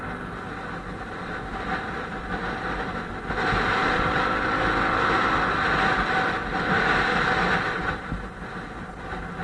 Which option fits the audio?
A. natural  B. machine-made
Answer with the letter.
A